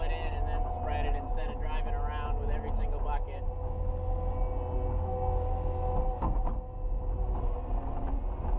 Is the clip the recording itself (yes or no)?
yes